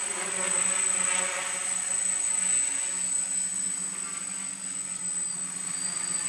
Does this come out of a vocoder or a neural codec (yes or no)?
no